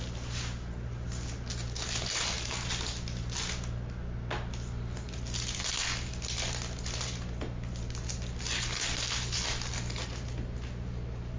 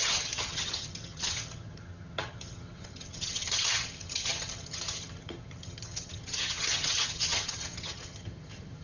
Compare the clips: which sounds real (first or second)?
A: first